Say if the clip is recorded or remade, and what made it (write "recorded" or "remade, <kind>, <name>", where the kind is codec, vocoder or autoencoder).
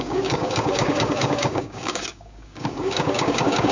remade, codec, DAC